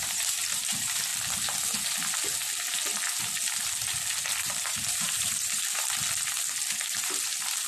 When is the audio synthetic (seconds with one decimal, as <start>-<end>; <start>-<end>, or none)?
0.0-1.1; 4.4-6.0; 6.9-7.7